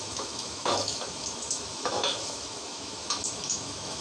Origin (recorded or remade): remade